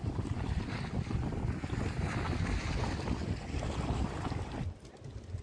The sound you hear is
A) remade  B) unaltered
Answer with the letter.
B